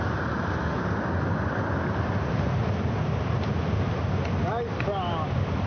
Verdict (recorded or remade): recorded